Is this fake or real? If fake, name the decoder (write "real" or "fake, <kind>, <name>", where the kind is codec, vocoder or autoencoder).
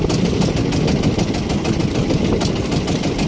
real